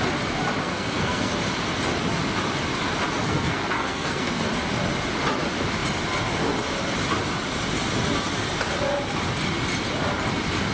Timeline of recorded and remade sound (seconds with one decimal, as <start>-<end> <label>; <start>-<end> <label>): 0.0-0.6 recorded; 0.6-1.3 remade; 1.3-3.2 recorded; 3.2-4.5 remade; 4.5-10.7 recorded